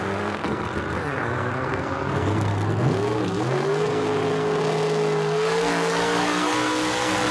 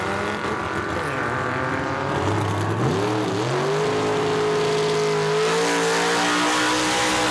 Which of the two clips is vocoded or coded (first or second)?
first